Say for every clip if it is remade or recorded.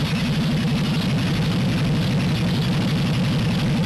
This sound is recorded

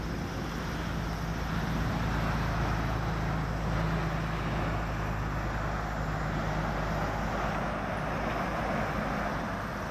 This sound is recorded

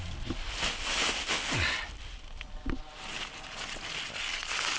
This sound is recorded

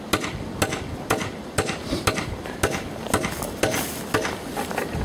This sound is recorded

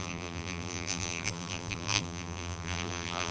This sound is remade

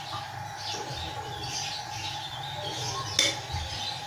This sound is recorded